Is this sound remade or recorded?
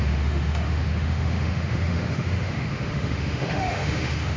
remade